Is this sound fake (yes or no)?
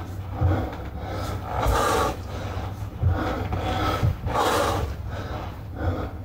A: no